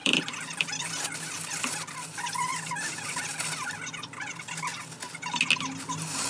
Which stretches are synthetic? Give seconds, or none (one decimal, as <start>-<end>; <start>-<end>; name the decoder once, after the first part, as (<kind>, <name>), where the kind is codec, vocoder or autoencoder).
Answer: 0.0-1.0 (vocoder, BigVGAN v2)